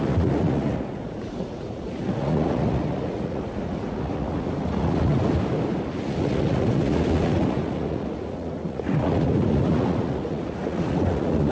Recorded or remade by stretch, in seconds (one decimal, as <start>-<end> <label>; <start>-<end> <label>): 0.0-5.2 remade; 5.2-5.9 recorded; 5.9-11.5 remade